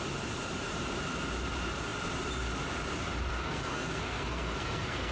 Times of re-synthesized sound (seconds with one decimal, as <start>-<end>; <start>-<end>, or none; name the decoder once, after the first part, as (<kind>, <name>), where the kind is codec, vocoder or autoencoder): 3.3-5.1 (codec, SNAC)